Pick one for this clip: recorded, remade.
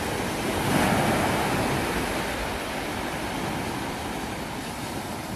recorded